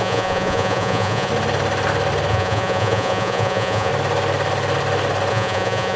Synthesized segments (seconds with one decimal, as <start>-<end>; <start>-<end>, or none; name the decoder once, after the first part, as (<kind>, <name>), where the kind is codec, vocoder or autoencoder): 0.0-1.3 (vocoder, Vocos); 2.3-3.9; 5.3-6.0